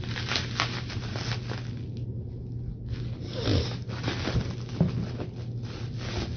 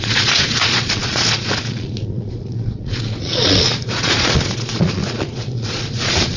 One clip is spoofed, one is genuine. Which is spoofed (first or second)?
second